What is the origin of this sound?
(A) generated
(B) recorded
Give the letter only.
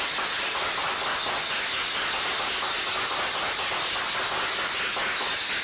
B